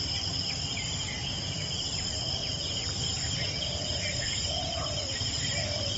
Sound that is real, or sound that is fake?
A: fake